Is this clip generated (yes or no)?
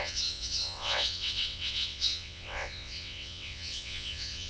yes